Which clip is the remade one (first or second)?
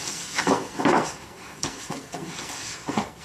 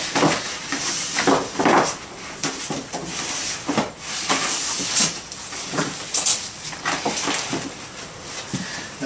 first